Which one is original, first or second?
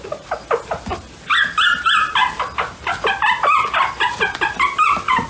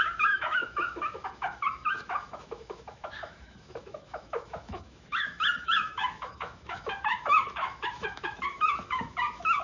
first